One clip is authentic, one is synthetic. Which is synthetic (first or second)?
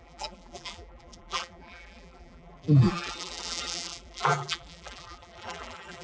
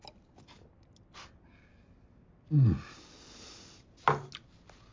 first